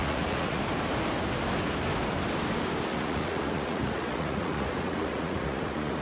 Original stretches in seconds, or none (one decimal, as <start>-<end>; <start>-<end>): 0.6-2.9